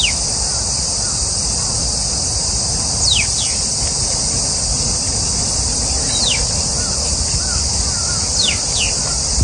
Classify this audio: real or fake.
real